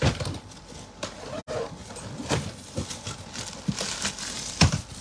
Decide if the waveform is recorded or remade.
recorded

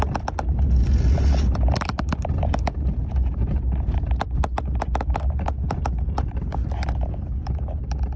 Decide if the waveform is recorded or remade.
recorded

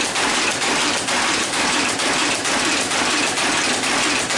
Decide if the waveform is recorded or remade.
recorded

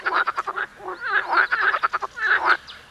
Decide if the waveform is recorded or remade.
recorded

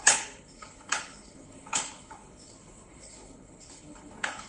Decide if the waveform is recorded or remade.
remade